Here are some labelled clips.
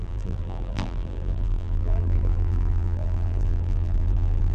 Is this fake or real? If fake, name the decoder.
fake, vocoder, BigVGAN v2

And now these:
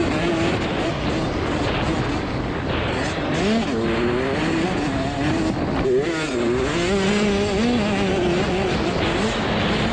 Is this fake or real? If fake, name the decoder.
real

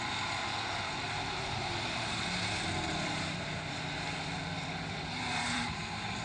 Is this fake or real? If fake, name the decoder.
fake, vocoder, BigVGAN v2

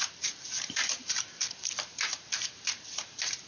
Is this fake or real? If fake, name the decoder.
fake, vocoder, BigVGAN v2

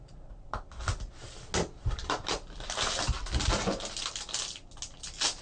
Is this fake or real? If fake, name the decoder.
real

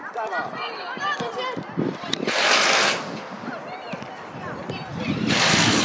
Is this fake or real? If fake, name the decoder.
fake, vocoder, BigVGAN v2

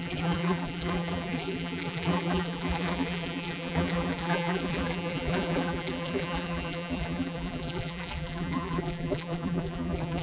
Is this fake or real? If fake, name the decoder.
fake, vocoder, BigVGAN v2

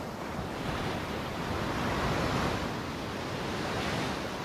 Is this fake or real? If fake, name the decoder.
real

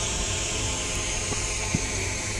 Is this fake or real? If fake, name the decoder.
fake, vocoder, BigVGAN v2